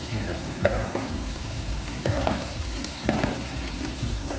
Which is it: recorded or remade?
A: remade